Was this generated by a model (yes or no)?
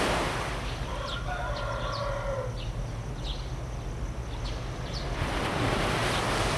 no